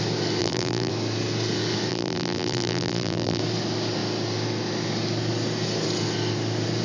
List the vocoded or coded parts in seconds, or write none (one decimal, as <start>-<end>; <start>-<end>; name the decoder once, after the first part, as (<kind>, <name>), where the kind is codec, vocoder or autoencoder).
0.4-0.9 (vocoder, BigVGAN v2); 1.9-3.4